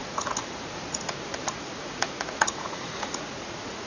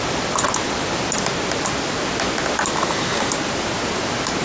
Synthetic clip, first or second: first